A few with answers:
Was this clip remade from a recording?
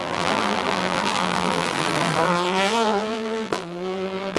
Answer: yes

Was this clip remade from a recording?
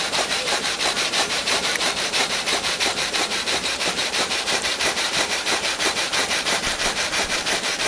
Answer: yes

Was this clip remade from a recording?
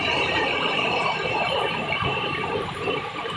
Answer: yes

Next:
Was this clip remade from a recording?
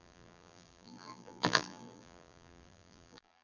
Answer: yes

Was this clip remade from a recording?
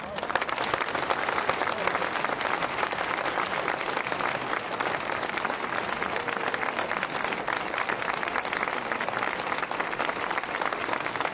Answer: no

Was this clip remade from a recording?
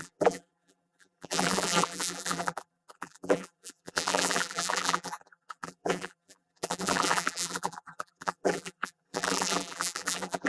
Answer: yes